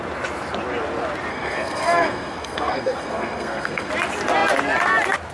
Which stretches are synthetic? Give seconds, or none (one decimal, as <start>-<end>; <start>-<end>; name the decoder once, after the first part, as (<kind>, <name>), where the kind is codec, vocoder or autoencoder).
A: 1.3-3.9 (codec, SNAC)